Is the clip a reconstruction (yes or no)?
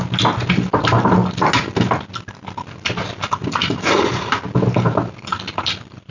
no